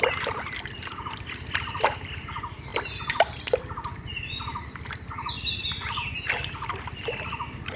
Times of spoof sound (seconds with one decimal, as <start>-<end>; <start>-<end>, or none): none